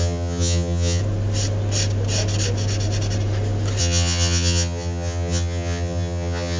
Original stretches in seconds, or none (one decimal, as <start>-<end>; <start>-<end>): 1.0-3.8